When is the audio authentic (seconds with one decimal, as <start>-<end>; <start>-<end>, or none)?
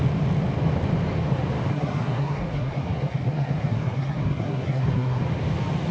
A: 0.0-1.7; 5.2-5.9